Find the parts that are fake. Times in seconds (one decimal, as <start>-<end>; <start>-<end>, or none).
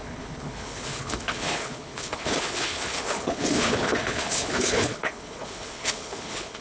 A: 0.0-6.6